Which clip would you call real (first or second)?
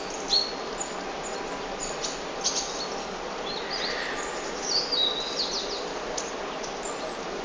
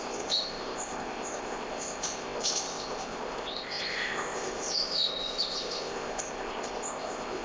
first